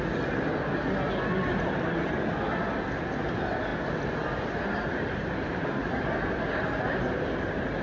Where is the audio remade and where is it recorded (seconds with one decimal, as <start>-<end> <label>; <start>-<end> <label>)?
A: 0.0-7.8 recorded